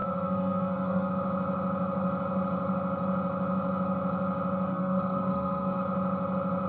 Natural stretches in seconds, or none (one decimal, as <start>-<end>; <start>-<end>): 1.1-4.7; 5.8-6.7